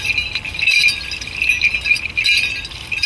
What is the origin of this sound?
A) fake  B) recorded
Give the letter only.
B